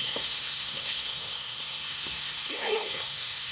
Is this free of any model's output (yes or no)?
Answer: no